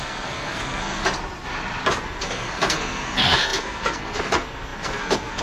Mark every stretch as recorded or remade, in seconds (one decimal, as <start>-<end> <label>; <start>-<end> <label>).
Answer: 0.0-1.0 remade; 1.0-2.0 recorded; 2.0-5.4 remade